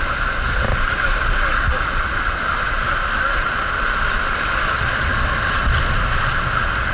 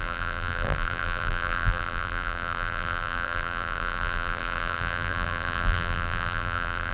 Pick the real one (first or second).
first